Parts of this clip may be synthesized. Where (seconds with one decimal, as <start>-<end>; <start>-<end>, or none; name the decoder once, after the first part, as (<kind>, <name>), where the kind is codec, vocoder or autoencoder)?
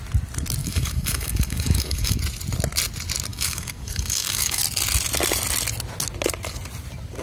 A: 0.6-2.2 (codec, DAC); 3.3-4.6